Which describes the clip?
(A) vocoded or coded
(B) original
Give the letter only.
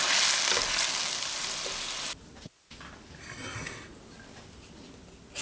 B